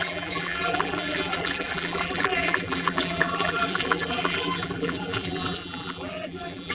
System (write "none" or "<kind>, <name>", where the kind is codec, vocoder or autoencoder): vocoder, BigVGAN v2